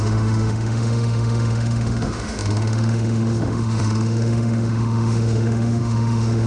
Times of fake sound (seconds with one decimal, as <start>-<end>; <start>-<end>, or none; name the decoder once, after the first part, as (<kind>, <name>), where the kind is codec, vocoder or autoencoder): 0.0-6.5 (autoencoder, DAC-VAE)